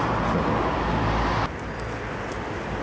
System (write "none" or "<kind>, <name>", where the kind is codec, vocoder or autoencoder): none